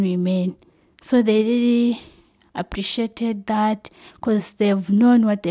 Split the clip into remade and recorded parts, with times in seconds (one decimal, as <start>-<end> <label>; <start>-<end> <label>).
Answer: 0.0-5.5 recorded